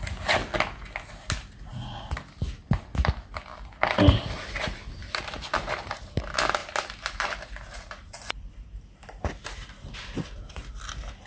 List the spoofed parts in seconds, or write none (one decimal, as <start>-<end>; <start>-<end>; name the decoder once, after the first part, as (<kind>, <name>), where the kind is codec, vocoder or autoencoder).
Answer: 5.0-6.0 (vocoder, BigVGAN v2); 6.6-9.2